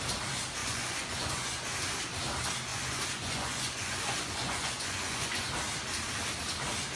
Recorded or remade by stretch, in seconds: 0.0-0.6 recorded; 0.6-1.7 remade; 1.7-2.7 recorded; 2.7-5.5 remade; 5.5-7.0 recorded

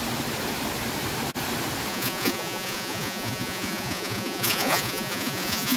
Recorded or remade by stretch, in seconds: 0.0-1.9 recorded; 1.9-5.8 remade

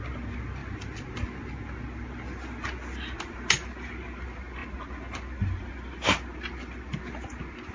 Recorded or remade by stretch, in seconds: 0.0-7.7 recorded

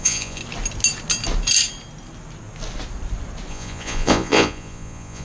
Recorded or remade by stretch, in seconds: 0.0-0.4 remade; 0.4-3.5 recorded; 3.5-5.2 remade

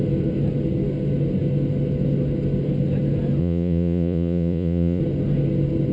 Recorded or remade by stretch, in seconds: 0.0-3.4 recorded; 3.4-5.0 remade; 5.0-5.9 recorded